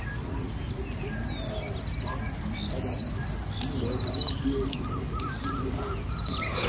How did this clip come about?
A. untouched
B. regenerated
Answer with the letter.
A